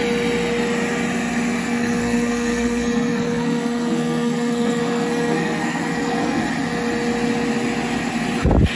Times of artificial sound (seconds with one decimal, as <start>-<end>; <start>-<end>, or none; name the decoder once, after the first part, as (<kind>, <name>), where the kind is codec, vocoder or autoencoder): 1.6-6.4 (codec, SNAC)